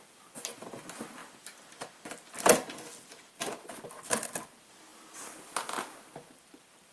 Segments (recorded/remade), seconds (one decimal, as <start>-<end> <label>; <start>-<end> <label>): 0.0-6.9 recorded